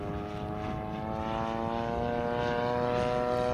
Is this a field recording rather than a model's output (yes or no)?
yes